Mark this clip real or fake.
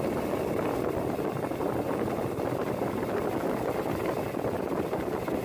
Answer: real